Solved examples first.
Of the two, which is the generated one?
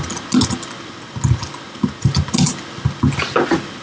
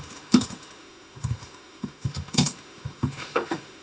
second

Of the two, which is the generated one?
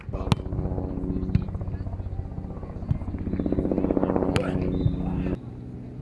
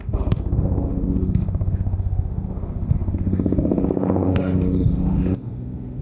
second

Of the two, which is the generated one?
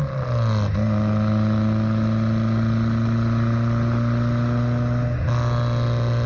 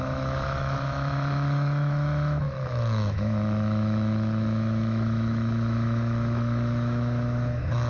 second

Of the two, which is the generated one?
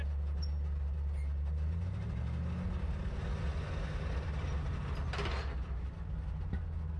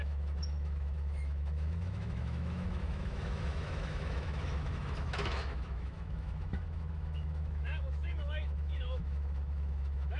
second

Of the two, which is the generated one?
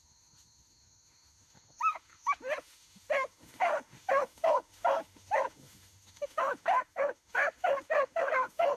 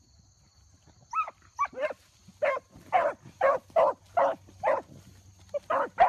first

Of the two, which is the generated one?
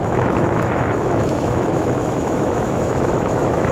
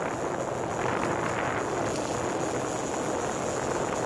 first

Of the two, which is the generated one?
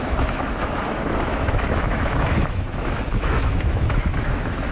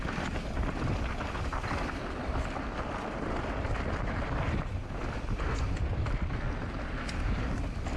first